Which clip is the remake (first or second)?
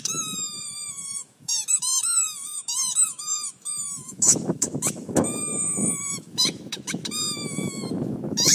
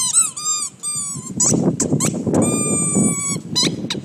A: first